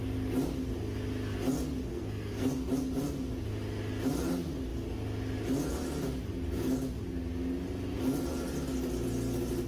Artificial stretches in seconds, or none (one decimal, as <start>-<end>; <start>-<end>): 1.9-2.7